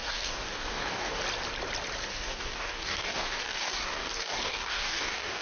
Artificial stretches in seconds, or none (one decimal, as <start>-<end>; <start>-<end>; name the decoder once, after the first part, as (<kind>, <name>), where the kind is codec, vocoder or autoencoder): 0.0-1.2 (codec, DAC); 2.1-5.4